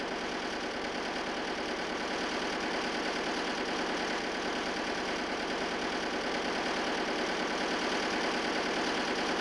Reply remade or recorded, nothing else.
recorded